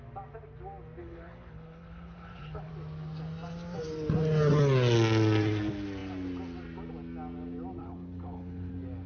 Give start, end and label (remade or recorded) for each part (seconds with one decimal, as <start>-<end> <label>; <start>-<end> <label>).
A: 0.0-1.0 recorded; 1.0-2.7 remade; 2.7-7.8 recorded; 7.8-8.7 remade; 8.7-9.1 recorded